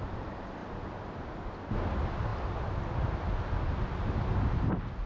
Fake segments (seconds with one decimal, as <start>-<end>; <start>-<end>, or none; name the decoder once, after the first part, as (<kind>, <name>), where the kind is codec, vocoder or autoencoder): none